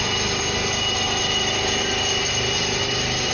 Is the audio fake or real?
real